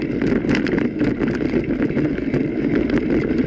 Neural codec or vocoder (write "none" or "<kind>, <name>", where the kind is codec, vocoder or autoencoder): none